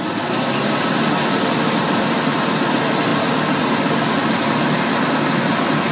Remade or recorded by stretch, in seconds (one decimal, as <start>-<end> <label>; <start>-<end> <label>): 0.0-5.9 recorded